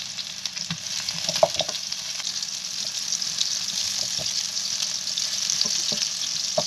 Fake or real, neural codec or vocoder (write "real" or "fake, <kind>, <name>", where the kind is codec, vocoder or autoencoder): real